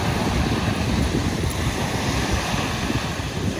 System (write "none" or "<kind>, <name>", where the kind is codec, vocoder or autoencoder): vocoder, BigVGAN v2